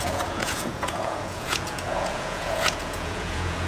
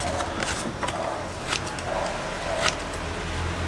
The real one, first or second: second